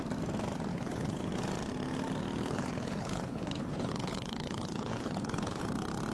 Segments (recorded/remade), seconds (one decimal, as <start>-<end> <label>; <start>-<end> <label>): 0.0-0.7 recorded; 0.7-1.3 remade; 1.3-2.4 recorded; 2.4-5.6 remade; 5.6-6.1 recorded